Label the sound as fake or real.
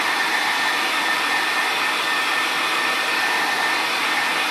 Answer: real